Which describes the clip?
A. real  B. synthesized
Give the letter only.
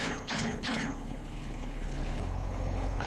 B